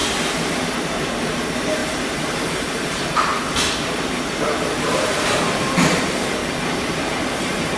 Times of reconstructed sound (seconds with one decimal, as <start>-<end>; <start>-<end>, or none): 0.5-3.3; 3.8-6.4; 7.0-7.8